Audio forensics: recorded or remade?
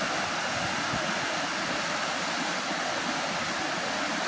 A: recorded